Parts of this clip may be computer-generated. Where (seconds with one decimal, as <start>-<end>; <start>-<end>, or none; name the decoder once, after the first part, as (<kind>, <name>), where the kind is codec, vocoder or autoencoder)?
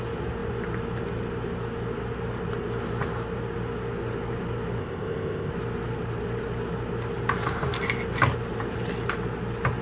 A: 4.8-5.5 (codec, ZipCodec)